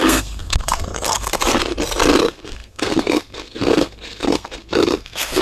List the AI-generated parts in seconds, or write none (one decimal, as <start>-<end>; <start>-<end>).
0.0-1.6; 2.2-5.4